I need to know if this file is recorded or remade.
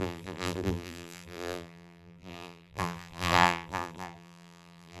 remade